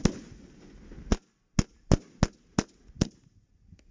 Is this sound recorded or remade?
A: recorded